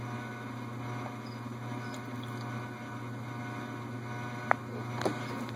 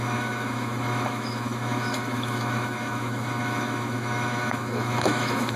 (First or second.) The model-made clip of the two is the second